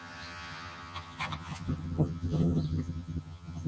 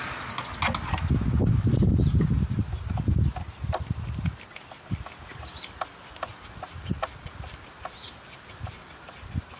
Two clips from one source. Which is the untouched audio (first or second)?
second